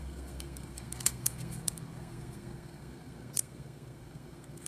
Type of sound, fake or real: fake